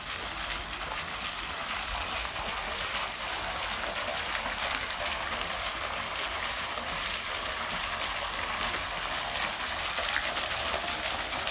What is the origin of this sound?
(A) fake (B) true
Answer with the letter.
B